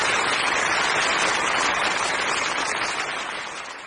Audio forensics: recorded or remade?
recorded